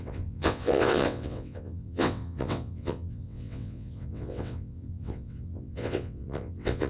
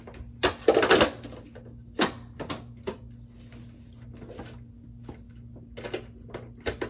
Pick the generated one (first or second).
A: first